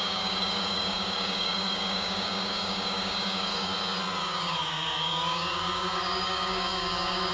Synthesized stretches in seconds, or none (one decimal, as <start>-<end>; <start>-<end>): 0.0-3.7; 4.2-7.3